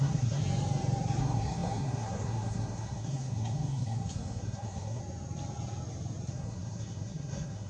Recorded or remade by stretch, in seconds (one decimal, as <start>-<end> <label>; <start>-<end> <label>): 0.0-0.4 remade; 0.4-1.2 recorded; 1.2-5.0 remade; 5.0-6.3 recorded; 6.3-7.7 remade